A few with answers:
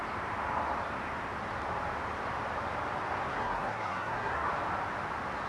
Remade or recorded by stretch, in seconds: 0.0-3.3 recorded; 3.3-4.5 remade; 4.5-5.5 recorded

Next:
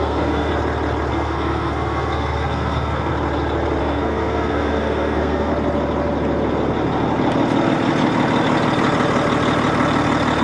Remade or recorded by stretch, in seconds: 0.0-0.5 remade; 0.5-1.1 recorded; 1.1-3.1 remade; 3.1-3.8 recorded; 3.8-5.5 remade; 5.5-10.4 recorded

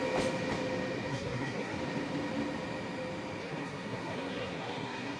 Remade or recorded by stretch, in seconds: 0.0-1.1 recorded; 1.1-1.8 remade; 1.8-3.4 recorded; 3.4-5.2 remade

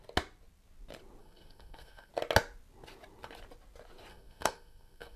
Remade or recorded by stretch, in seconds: 0.0-1.2 recorded; 1.2-2.1 remade; 2.1-4.1 recorded; 4.1-5.2 remade